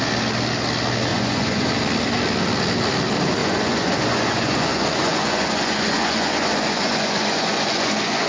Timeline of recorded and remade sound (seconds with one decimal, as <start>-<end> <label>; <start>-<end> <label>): 0.0-1.1 recorded; 1.1-1.7 remade; 1.7-3.4 recorded; 3.4-8.3 remade